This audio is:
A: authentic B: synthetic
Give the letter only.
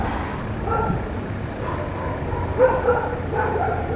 A